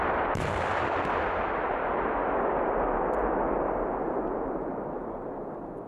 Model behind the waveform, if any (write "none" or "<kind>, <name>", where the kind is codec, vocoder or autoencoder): none